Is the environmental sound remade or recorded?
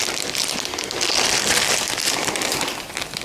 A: remade